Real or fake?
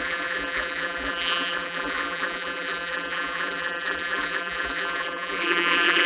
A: fake